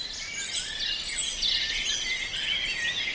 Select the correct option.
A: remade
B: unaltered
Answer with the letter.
B